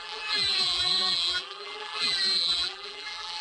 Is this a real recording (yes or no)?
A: no